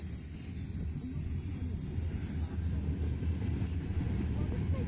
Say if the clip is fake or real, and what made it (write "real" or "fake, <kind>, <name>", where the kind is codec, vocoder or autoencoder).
real